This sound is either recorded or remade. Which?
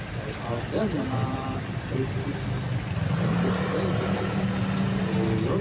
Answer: recorded